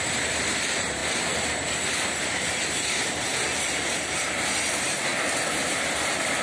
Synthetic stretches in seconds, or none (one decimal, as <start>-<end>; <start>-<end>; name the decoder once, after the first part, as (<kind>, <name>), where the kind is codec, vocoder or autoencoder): 0.0-1.0 (vocoder, BigVGAN v2); 2.6-3.3; 3.9-5.1; 5.9-6.4